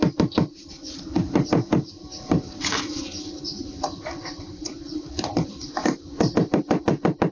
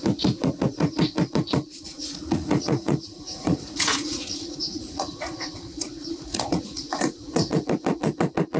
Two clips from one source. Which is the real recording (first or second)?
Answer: first